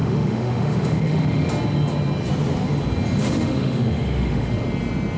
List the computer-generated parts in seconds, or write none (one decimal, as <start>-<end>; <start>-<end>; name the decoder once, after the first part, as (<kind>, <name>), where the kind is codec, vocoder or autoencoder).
0.0-1.5 (autoencoder, DAC-VAE); 3.2-4.5